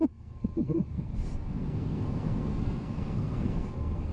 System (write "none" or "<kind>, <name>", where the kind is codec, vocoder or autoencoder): codec, SNAC